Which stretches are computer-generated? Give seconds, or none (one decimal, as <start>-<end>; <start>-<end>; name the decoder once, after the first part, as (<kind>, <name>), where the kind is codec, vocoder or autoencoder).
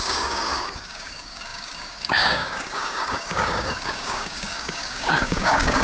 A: 0.0-5.8 (codec, DAC)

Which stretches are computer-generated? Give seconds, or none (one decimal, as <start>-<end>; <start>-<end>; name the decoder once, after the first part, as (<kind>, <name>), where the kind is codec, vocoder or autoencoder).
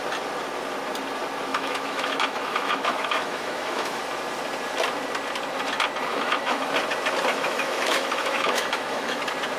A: 1.5-4.0 (autoencoder, DAC-VAE); 6.1-6.7; 7.3-9.2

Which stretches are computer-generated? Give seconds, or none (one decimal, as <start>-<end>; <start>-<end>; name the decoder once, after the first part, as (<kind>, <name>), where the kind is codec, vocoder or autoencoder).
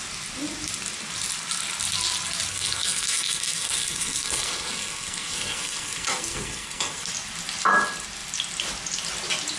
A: 2.5-7.1 (codec, SNAC)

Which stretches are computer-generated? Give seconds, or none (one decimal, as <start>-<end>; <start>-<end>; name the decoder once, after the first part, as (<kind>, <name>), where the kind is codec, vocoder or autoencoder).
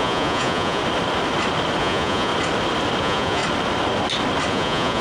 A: 0.0-0.8 (vocoder, Vocos); 1.8-2.3; 3.0-3.4; 4.5-5.0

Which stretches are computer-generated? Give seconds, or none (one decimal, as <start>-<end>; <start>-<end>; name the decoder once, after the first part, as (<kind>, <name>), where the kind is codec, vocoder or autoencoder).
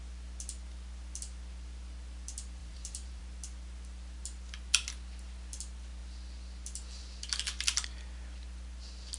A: 2.6-3.2 (vocoder, BigVGAN v2)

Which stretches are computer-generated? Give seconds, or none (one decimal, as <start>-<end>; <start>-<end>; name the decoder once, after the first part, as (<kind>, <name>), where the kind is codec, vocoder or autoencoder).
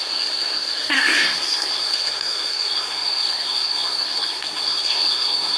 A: 0.0-5.6 (codec, SNAC)